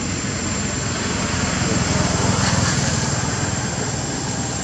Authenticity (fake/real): real